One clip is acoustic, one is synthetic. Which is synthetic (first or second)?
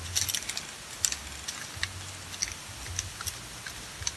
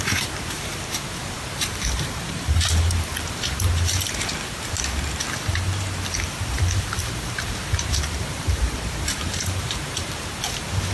second